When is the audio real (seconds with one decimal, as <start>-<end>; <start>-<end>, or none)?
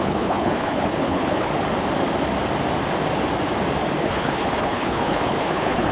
1.5-4.0